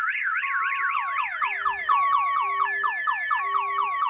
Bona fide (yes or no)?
yes